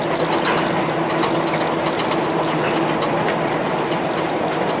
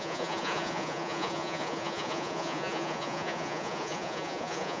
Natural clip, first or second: first